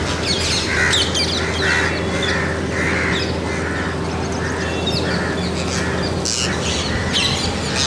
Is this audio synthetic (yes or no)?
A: no